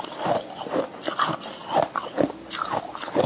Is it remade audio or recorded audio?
recorded